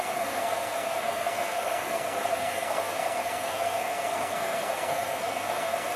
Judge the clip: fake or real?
fake